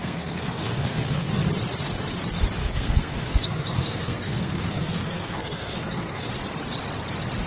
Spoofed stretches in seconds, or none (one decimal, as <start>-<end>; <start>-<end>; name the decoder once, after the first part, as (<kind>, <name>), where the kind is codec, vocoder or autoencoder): 0.0-1.3 (codec, SNAC); 2.6-6.2